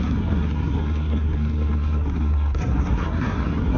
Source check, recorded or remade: remade